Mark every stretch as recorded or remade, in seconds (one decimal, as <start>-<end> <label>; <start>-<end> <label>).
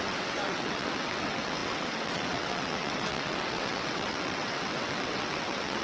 0.0-5.8 remade